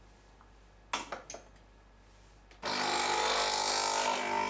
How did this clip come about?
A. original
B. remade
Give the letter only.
A